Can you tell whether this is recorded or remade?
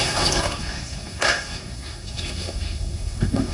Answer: remade